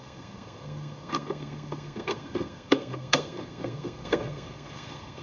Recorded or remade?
remade